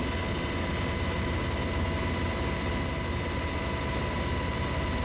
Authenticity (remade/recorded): recorded